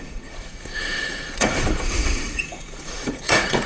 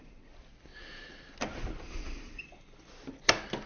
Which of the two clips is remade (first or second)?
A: first